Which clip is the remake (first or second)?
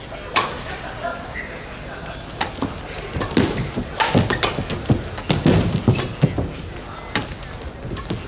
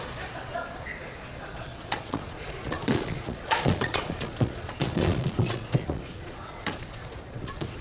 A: second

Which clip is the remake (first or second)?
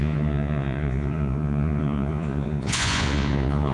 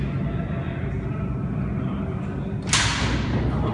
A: first